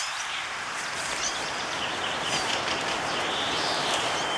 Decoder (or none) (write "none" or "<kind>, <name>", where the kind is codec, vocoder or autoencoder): vocoder, BigVGAN v2